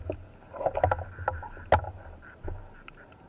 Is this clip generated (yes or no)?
no